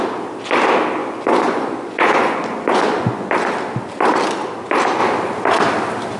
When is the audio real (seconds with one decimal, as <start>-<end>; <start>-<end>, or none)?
0.0-1.0; 3.3-6.2